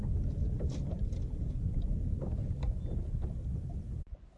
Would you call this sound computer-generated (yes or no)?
no